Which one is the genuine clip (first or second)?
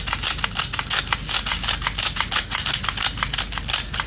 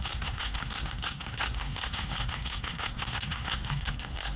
first